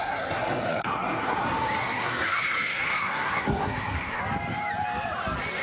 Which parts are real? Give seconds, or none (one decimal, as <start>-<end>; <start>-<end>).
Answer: 1.4-1.8; 4.2-5.6